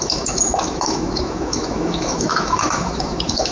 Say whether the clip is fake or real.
fake